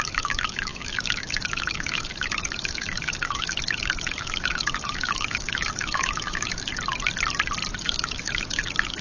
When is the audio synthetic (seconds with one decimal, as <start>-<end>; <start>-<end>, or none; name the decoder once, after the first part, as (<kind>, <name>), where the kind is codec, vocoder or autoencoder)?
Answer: 0.0-6.7 (autoencoder, DAC-VAE); 7.8-9.0